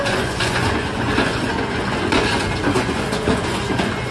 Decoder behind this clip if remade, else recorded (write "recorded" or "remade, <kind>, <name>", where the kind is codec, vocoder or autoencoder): remade, vocoder, Vocos